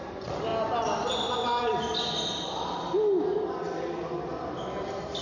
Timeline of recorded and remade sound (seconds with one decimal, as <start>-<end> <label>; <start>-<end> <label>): 0.0-5.2 recorded

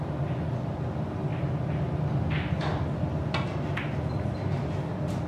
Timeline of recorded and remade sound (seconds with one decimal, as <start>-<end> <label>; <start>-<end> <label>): 0.0-5.3 recorded